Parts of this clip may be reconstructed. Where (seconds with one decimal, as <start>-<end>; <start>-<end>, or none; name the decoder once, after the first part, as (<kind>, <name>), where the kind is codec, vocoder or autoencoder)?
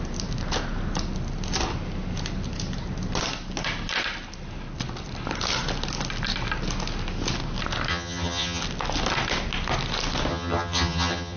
7.9-8.6 (vocoder, HiFi-GAN); 10.3-11.4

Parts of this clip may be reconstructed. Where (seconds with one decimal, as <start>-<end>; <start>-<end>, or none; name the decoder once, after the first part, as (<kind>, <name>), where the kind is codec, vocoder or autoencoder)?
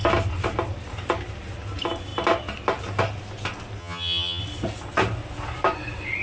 3.8-4.4 (vocoder, HiFi-GAN)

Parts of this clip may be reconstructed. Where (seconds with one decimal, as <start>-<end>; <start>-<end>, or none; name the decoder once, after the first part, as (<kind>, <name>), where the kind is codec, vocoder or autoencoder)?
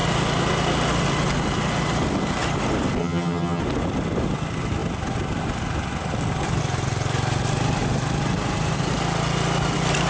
3.0-3.6 (vocoder, HiFi-GAN)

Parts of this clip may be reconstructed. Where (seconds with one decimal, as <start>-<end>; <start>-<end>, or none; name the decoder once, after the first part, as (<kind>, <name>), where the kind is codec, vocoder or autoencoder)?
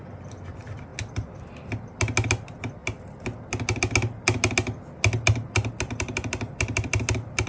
none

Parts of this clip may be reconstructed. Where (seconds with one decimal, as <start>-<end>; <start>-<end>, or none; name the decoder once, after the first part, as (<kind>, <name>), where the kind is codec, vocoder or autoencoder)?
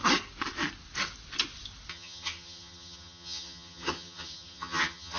1.9-5.2 (vocoder, HiFi-GAN)